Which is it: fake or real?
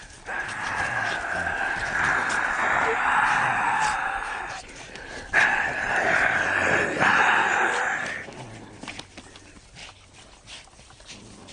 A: real